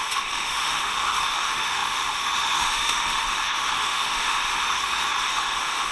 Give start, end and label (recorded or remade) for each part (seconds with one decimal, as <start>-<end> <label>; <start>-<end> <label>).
0.0-5.9 remade